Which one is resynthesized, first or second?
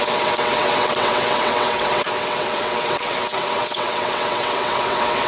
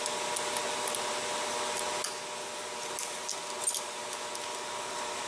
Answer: first